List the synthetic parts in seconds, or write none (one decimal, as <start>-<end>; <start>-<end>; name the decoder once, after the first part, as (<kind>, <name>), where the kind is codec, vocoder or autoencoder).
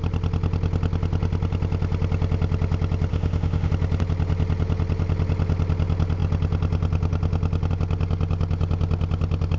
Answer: 3.1-3.7 (autoencoder, DAC-VAE)